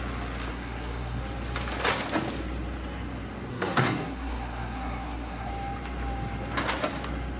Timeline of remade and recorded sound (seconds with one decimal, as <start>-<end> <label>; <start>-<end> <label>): 0.0-0.5 recorded; 0.5-1.2 remade; 1.2-3.5 recorded; 3.5-5.5 remade; 5.5-7.4 recorded